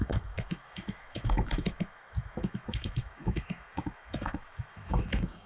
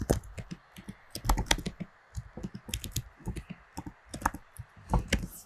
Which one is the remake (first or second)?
first